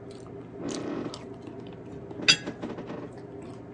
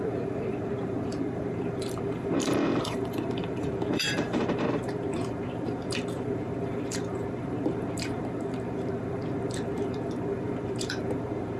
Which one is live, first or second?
first